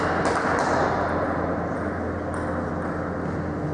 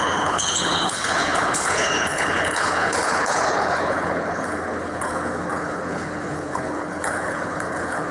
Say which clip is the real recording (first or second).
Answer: first